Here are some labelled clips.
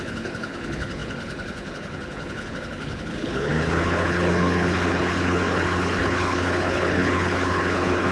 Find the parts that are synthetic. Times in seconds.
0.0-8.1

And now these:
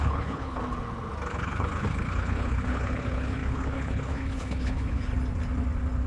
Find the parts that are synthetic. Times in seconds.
0.0-0.6; 1.3-5.1

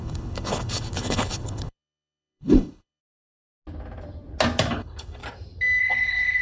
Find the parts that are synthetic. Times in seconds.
0.0-3.0; 4.7-5.2; 5.8-6.4

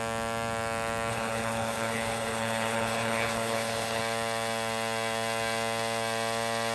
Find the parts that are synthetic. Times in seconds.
1.1-4.0

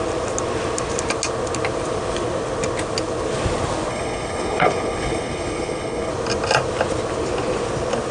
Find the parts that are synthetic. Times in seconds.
3.9-6.1